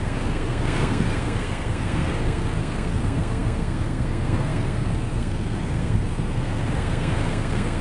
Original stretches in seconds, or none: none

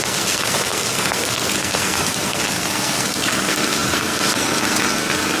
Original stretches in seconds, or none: none

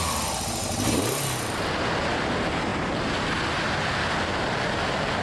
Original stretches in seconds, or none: 0.0-5.2

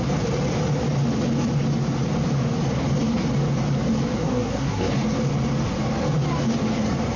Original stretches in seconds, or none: 0.0-4.2; 4.9-7.2

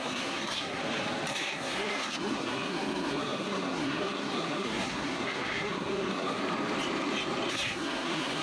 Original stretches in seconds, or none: 0.8-1.3; 6.4-7.5